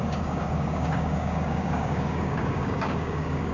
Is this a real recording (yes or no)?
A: no